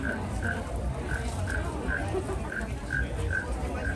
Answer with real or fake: fake